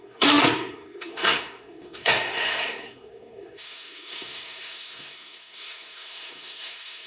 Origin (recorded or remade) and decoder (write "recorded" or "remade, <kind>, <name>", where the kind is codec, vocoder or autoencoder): remade, codec, SNAC